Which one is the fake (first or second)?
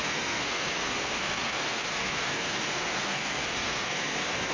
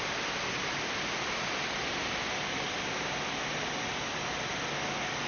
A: first